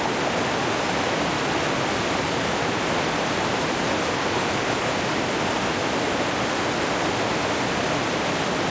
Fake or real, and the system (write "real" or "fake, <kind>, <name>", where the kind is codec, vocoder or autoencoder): real